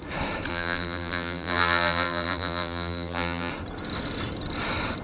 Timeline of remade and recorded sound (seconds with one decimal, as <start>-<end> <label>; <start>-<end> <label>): 0.0-0.5 recorded; 0.5-3.5 remade; 3.5-5.0 recorded